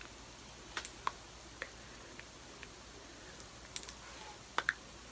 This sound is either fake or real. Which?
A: real